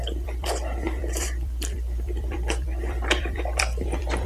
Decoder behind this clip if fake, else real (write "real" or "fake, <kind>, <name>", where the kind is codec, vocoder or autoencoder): fake, vocoder, BigVGAN v2